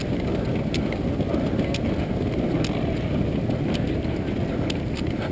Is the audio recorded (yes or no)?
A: yes